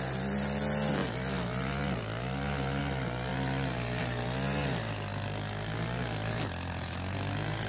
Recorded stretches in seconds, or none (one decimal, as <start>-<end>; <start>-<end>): 0.0-7.7